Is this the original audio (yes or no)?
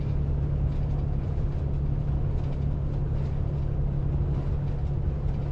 yes